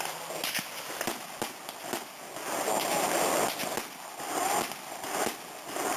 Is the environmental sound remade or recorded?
recorded